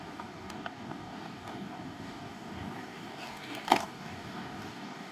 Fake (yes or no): yes